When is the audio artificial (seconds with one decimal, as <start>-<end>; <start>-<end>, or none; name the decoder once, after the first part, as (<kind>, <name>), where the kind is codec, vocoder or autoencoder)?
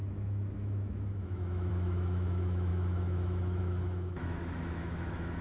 0.0-5.4 (autoencoder, DAC-VAE)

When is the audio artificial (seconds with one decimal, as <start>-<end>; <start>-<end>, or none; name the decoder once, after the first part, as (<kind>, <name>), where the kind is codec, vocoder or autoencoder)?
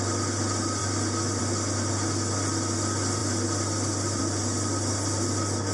none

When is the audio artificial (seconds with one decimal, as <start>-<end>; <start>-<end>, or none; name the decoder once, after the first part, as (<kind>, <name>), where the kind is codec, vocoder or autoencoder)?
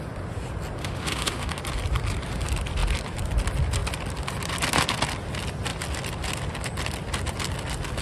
0.8-1.6 (autoencoder, DAC-VAE)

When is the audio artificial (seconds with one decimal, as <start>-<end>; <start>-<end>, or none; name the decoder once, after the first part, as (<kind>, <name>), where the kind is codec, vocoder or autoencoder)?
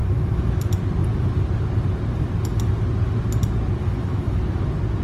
0.0-0.5 (autoencoder, DAC-VAE); 3.8-4.4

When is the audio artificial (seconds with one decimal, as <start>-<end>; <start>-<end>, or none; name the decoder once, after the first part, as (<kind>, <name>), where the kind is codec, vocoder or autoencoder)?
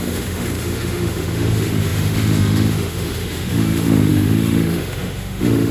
0.0-5.7 (autoencoder, DAC-VAE)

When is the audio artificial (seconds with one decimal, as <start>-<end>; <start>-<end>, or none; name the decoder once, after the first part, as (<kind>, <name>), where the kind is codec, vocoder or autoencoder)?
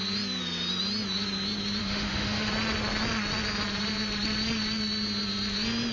1.8-2.5 (autoencoder, DAC-VAE)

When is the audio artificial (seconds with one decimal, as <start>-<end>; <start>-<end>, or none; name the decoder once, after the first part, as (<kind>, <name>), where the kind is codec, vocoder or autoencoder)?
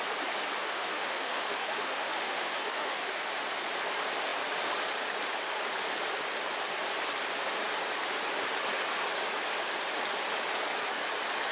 0.6-3.1 (autoencoder, DAC-VAE)